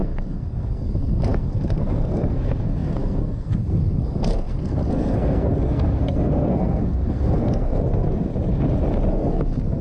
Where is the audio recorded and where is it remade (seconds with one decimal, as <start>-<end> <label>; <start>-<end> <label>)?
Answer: 0.0-8.3 remade; 8.3-9.1 recorded; 9.1-9.8 remade